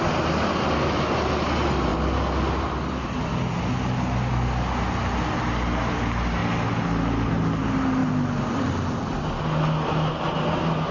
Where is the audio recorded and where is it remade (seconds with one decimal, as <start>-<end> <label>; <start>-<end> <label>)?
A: 0.0-10.9 recorded